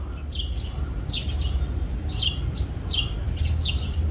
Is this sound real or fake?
real